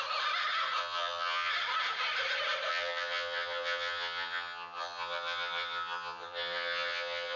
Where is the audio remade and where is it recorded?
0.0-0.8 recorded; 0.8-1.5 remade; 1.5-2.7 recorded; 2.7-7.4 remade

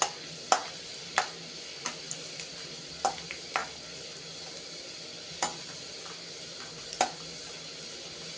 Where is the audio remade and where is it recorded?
0.0-0.6 recorded; 0.6-3.1 remade; 3.1-8.4 recorded